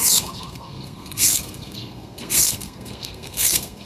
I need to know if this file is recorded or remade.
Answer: remade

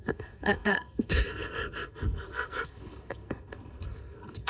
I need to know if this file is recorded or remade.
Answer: remade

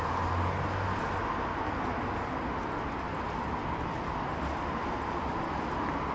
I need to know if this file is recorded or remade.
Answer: recorded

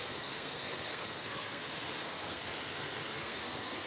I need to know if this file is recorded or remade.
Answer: remade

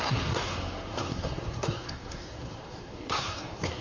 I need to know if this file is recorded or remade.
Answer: remade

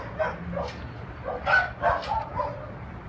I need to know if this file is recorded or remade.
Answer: recorded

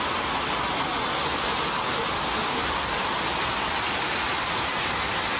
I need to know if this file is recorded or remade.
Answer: recorded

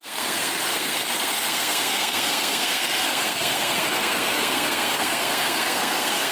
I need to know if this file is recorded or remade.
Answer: remade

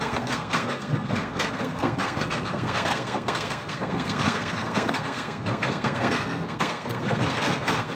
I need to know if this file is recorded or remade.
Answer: remade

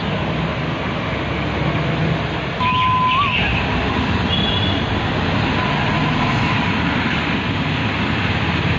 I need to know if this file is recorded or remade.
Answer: recorded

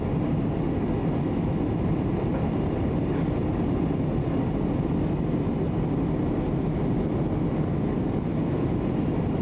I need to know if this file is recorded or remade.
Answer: recorded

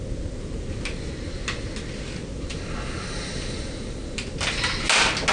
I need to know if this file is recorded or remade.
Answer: recorded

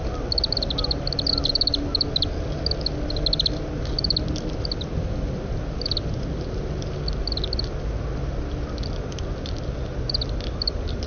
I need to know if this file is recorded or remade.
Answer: recorded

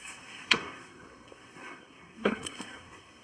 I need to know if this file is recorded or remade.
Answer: remade